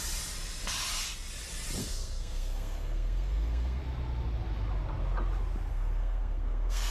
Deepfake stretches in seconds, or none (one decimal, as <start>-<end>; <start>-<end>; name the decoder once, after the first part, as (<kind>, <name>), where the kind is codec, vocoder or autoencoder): 1.8-3.8 (codec, SNAC); 5.7-6.9